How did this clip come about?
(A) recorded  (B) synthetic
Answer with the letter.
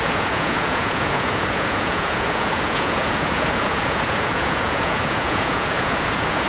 B